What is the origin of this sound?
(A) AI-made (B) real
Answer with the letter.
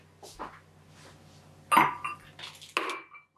B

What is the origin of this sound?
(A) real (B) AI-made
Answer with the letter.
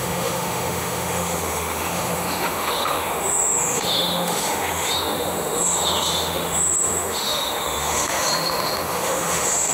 B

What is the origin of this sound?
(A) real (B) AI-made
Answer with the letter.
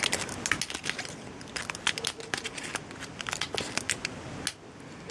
A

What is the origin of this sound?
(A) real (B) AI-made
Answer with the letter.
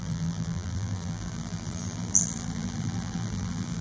B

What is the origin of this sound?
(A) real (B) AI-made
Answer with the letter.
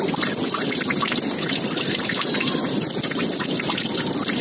B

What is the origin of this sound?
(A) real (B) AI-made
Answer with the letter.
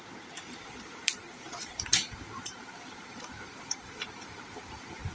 B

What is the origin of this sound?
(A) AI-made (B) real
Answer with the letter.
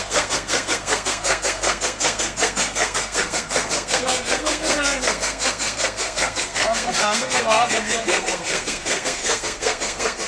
A